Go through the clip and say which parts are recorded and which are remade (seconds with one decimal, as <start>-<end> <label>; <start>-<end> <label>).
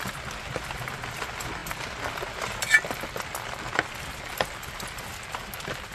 0.0-5.9 recorded